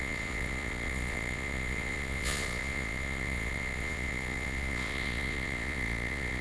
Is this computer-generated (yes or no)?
yes